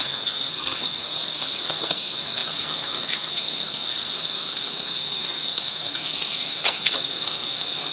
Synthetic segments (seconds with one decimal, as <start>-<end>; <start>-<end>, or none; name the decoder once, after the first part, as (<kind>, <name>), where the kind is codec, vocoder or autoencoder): 0.0-7.9 (codec, SNAC)